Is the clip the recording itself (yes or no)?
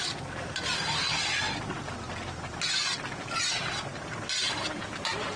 yes